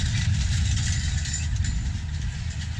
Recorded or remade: recorded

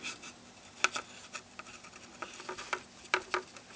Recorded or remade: recorded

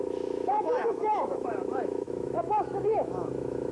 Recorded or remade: remade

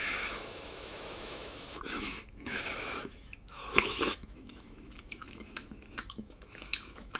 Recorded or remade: remade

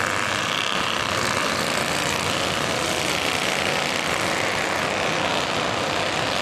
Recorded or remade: recorded